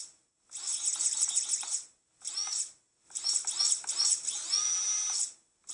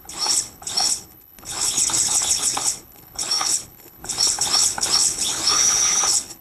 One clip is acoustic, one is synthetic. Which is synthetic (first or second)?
second